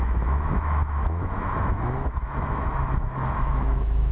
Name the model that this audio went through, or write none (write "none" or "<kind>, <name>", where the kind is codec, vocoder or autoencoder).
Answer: autoencoder, DAC-VAE